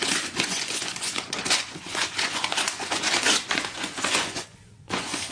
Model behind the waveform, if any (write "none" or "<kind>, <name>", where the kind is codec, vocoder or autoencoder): vocoder, Vocos